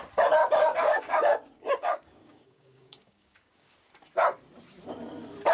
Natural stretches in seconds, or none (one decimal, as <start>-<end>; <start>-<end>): 0.0-0.4; 3.7-5.5